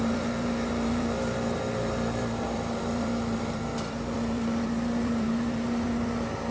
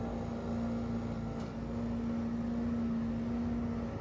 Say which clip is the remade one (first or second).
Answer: first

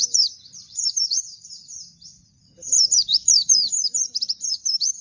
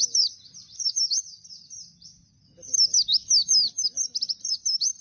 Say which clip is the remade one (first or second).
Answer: first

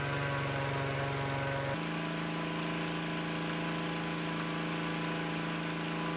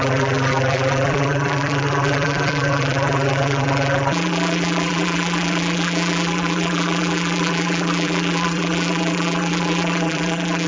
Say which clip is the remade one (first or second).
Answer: second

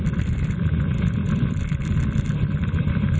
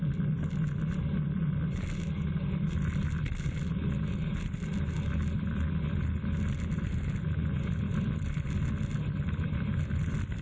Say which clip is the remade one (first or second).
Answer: first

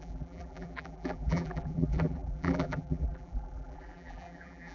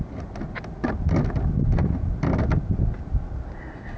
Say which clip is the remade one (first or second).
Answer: first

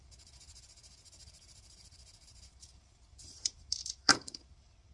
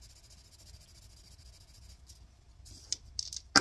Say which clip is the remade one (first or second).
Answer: first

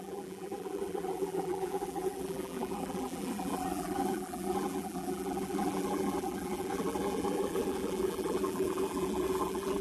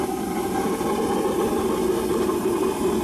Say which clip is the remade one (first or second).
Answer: first